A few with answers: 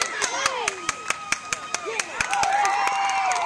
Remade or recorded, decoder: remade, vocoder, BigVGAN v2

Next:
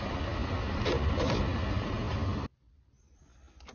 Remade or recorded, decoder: recorded